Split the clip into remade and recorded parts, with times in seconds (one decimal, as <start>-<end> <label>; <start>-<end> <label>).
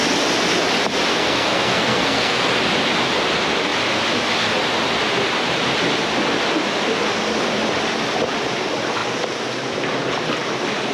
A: 0.0-1.1 recorded; 1.1-2.5 remade; 2.5-10.9 recorded